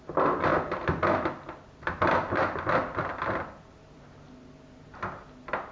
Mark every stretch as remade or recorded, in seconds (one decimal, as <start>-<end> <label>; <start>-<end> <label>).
0.0-5.7 recorded